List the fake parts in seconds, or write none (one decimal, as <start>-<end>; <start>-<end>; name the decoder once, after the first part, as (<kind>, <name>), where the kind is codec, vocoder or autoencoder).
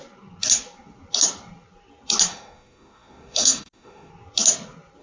2.3-4.1 (autoencoder, DAC-VAE)